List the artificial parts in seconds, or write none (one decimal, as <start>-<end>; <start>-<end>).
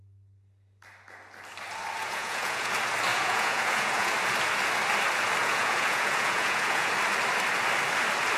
2.0-2.7; 3.1-4.1; 5.4-6.9